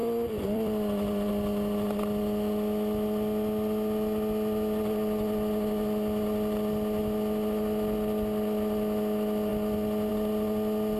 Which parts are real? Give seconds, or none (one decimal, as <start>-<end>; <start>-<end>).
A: 1.3-11.0